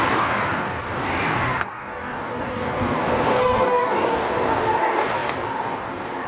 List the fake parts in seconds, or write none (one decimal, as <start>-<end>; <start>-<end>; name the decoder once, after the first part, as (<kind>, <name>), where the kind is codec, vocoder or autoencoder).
0.0-6.3 (codec, DAC)